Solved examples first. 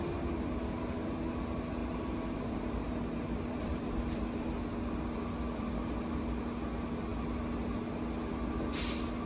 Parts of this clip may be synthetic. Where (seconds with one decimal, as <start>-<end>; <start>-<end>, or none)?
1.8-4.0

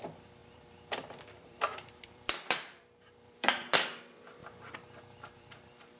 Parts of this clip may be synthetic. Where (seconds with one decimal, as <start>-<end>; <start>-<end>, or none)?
0.4-4.0; 4.4-6.0

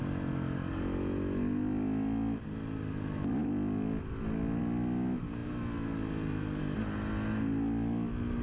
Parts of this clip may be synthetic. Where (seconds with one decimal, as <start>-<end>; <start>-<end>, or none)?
none

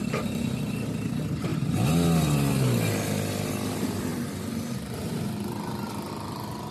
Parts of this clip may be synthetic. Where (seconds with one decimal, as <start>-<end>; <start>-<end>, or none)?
none